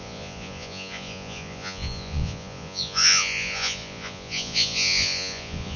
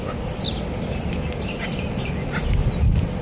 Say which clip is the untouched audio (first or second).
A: second